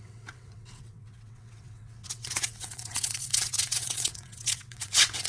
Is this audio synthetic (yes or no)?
yes